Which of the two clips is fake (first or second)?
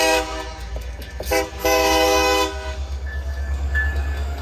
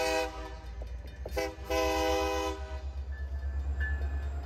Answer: first